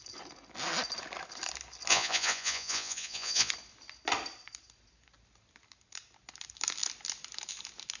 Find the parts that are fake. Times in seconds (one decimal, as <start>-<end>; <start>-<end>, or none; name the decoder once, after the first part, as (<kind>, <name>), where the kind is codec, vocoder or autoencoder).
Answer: 1.9-3.5 (vocoder, Vocos)